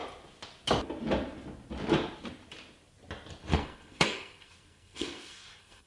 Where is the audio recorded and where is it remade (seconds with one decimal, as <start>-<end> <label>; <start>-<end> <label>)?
0.0-3.5 recorded; 3.5-5.9 remade